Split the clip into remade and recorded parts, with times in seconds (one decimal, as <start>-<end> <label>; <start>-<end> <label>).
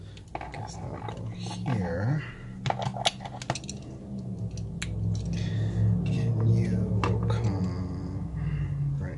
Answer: 0.0-9.2 recorded